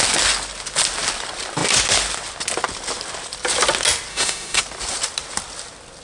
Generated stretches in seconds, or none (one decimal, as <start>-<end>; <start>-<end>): 4.1-4.6